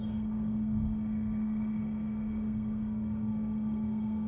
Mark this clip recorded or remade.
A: remade